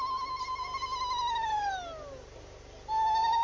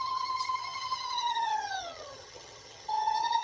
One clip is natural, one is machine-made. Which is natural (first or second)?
first